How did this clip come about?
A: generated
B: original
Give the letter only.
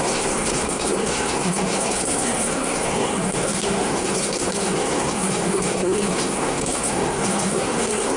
A